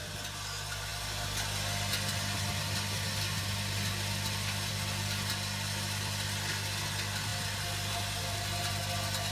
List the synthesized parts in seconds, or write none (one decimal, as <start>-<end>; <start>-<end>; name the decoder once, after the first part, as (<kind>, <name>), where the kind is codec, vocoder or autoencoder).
none